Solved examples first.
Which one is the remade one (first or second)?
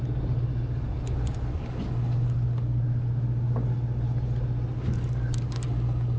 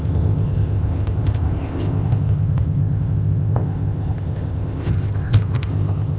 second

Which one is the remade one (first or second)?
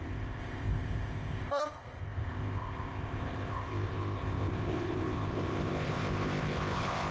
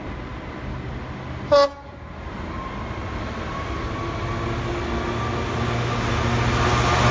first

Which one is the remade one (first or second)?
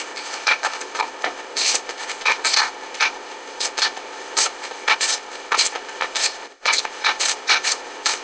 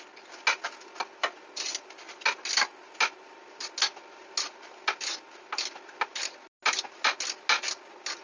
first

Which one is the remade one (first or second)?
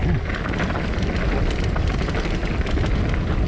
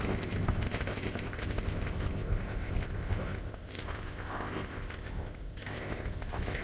second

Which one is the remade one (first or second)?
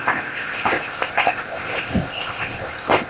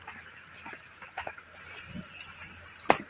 first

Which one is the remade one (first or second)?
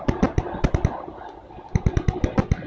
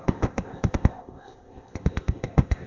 second